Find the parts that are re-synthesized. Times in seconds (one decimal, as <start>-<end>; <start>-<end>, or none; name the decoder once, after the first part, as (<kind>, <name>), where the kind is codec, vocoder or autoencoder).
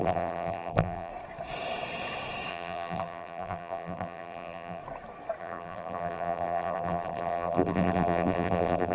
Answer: 0.0-1.1 (vocoder, BigVGAN v2); 2.5-4.8; 5.4-8.9